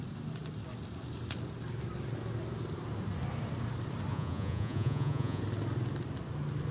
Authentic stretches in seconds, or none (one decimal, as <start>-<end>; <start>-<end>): 0.0-4.1; 5.4-6.7